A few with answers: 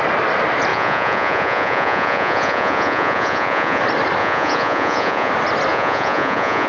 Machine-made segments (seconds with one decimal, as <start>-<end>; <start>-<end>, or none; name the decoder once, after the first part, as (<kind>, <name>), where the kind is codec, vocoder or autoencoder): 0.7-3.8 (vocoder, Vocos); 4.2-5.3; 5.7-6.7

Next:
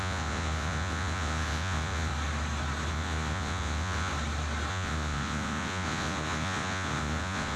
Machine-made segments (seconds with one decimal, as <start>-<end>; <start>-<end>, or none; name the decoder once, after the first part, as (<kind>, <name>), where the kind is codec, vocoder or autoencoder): 0.0-2.1 (vocoder, Vocos); 2.9-4.1; 4.7-7.6

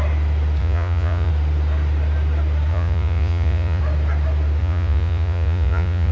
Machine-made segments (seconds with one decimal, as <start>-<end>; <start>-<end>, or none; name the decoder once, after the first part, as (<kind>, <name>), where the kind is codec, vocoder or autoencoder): 0.6-1.3 (vocoder, Vocos); 2.7-3.8; 4.6-6.1